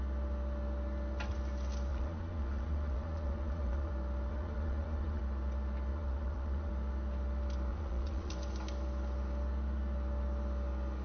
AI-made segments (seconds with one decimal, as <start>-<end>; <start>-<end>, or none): 1.9-3.9; 4.3-5.2; 5.9-6.7; 7.7-8.3